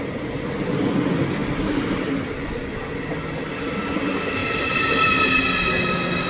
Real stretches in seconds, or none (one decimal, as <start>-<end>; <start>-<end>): 0.0-4.4; 5.4-6.3